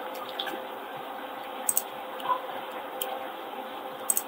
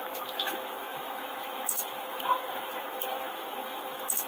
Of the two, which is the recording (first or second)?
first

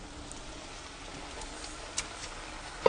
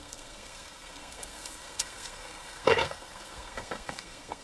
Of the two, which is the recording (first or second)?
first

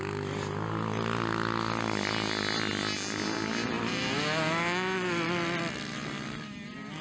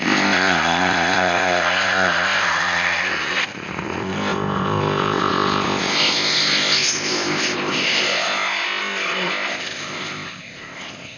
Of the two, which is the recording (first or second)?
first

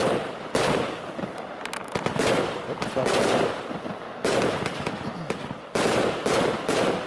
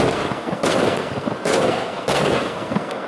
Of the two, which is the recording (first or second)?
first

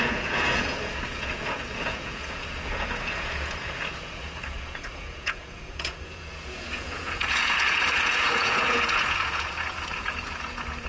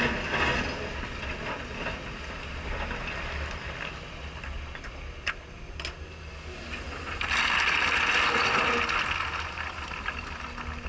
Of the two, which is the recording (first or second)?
second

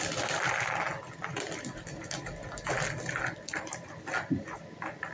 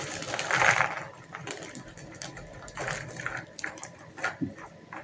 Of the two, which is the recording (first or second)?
first